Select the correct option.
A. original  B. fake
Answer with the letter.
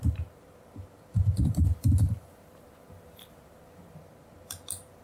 B